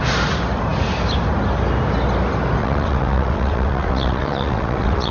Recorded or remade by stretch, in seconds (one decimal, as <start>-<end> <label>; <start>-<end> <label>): 0.0-2.6 recorded; 2.6-5.1 remade